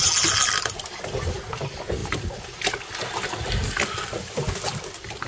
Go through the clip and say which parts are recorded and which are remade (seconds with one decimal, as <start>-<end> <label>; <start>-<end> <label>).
0.0-2.0 recorded; 2.0-2.7 remade; 2.7-5.3 recorded